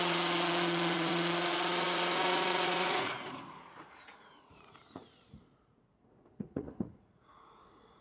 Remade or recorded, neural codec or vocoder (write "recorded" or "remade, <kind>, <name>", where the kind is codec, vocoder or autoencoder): remade, vocoder, Vocos